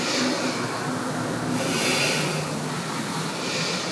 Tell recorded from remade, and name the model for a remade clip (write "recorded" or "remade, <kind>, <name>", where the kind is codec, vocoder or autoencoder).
recorded